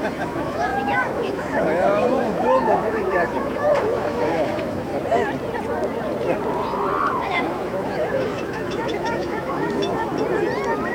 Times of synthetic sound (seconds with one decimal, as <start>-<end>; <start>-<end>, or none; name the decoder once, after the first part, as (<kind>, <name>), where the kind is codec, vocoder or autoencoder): 0.0-4.9 (autoencoder, DAC-VAE); 7.1-10.1